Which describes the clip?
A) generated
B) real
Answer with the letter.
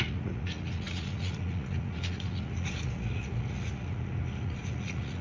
A